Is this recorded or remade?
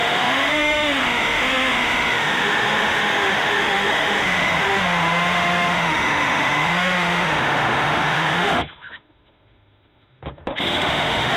remade